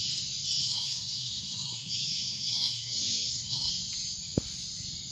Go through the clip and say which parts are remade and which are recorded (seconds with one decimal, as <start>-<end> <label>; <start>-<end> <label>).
0.0-0.6 recorded; 0.6-3.7 remade; 3.7-5.1 recorded